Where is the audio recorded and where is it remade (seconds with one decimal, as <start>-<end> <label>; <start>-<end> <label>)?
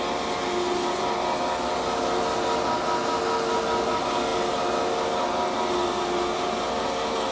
0.0-7.3 recorded